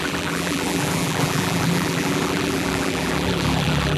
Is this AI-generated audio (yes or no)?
yes